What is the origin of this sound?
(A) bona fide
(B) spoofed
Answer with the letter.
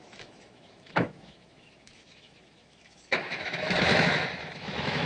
B